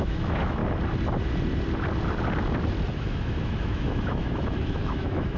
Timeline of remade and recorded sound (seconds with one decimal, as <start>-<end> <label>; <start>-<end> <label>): 0.0-0.6 remade; 0.6-2.9 recorded; 2.9-5.4 remade